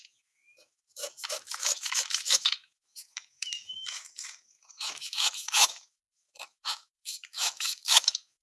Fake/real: fake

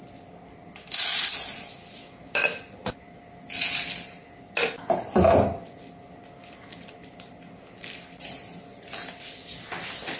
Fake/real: real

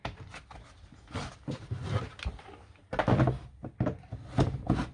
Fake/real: real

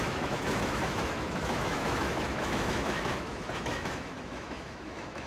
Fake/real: fake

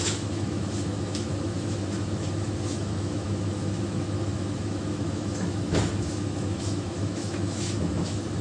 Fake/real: fake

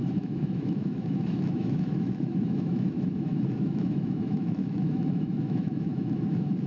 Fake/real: fake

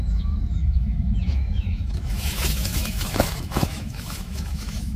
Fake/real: fake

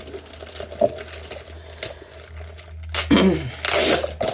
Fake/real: real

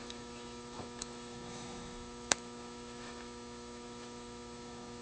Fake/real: fake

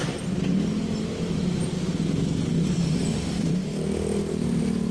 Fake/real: real